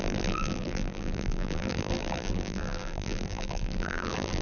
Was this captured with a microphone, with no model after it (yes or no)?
no